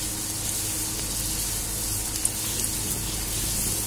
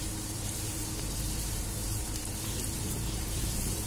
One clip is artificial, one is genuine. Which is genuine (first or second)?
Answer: first